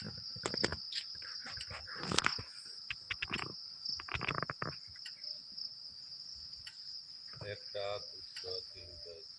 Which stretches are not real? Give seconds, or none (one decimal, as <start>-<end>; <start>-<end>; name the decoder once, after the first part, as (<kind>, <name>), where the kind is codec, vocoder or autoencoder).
none